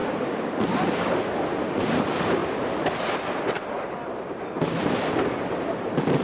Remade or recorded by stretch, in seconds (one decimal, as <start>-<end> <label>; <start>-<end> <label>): 0.0-1.0 remade; 1.0-2.4 recorded; 2.4-6.2 remade